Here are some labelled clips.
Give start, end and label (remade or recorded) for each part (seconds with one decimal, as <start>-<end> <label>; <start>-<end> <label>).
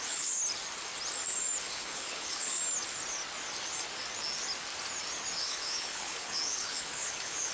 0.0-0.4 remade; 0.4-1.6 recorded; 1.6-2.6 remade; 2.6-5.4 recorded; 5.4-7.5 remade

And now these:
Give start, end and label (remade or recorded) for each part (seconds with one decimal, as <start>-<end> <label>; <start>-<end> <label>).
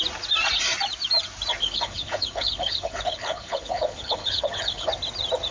0.0-1.6 recorded; 1.6-4.9 remade; 4.9-5.5 recorded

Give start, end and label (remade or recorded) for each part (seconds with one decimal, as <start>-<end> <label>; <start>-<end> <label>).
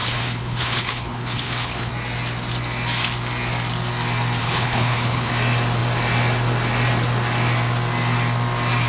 0.0-1.9 remade; 1.9-4.4 recorded; 4.4-5.3 remade; 5.3-8.9 recorded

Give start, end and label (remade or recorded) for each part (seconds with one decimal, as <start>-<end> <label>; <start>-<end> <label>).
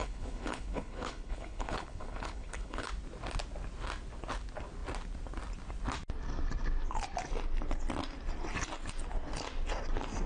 0.0-2.9 remade; 2.9-10.3 recorded